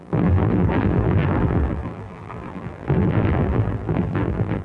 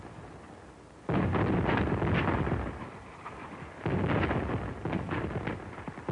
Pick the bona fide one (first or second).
second